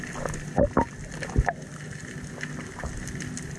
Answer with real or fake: real